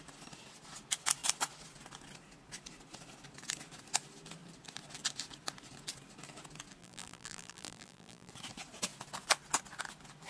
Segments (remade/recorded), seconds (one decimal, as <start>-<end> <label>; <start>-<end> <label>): 0.0-6.8 recorded; 6.8-8.3 remade; 8.3-10.3 recorded